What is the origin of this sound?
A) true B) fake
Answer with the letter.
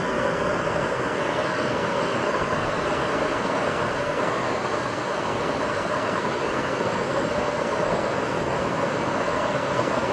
B